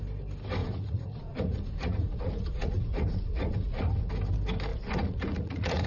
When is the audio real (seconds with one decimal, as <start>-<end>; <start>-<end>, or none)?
0.0-0.6; 4.1-4.7